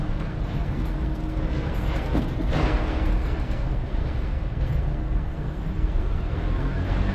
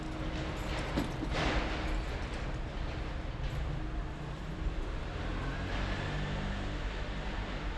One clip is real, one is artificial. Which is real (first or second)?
second